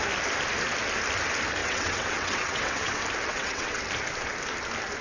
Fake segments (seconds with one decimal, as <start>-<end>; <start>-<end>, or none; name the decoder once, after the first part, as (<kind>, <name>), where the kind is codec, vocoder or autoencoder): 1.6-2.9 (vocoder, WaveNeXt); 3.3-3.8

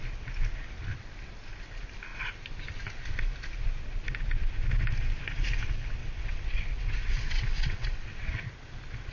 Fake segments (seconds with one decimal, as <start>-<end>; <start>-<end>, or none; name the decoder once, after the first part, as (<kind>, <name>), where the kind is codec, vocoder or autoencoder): 6.0-8.4 (vocoder, WaveNeXt)

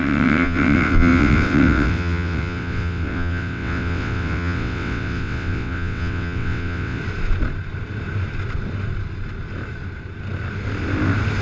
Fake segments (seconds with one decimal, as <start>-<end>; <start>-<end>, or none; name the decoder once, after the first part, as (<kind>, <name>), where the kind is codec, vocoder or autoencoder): 0.0-7.0 (vocoder, WaveNeXt)

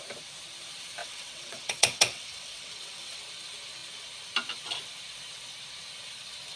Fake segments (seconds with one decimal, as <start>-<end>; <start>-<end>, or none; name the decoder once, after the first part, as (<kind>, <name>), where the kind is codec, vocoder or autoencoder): 1.0-3.2 (vocoder, WaveNeXt)

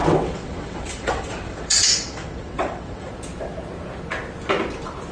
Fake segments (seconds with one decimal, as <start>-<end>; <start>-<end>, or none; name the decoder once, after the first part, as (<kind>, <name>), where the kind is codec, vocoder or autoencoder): 0.0-3.1 (vocoder, WaveNeXt)

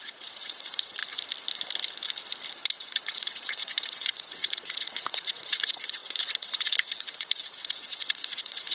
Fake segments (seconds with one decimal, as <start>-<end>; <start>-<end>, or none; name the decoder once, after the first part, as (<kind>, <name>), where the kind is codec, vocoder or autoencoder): 0.0-1.0 (vocoder, WaveNeXt); 2.6-8.7